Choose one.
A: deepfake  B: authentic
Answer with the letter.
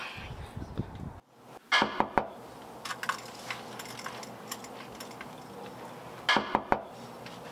B